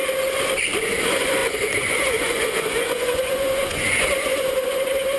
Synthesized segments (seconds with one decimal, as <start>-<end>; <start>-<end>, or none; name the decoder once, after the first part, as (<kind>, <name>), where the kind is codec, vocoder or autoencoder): 0.8-5.2 (vocoder, Vocos)

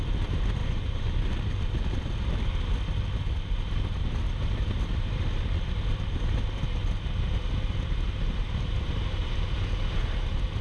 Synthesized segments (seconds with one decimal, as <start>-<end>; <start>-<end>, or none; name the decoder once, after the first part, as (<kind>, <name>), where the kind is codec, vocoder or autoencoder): 0.6-1.1 (vocoder, Vocos)

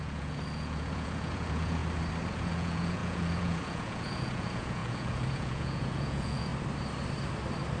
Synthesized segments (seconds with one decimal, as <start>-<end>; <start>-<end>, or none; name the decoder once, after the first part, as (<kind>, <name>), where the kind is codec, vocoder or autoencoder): 0.0-1.8 (vocoder, Vocos); 2.3-6.5

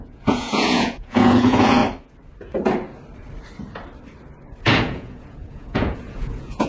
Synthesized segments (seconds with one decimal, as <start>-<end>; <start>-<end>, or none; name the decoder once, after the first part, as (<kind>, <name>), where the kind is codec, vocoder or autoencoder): 0.0-1.8 (vocoder, Vocos); 4.8-6.7